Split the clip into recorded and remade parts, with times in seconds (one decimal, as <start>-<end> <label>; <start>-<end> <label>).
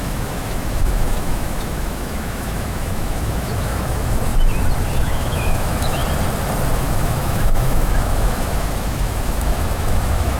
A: 0.0-4.3 remade; 4.3-4.9 recorded; 4.9-6.0 remade; 6.0-6.7 recorded; 6.7-10.4 remade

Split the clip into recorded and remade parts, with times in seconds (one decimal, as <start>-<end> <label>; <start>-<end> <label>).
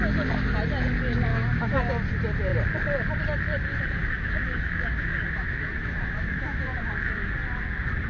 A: 0.0-1.3 recorded; 1.3-1.8 remade; 1.8-3.7 recorded; 3.7-7.3 remade; 7.3-8.1 recorded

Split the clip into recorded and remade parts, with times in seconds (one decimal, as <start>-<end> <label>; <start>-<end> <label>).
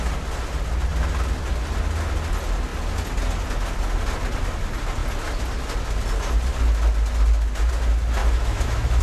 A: 0.0-8.2 recorded; 8.2-9.0 remade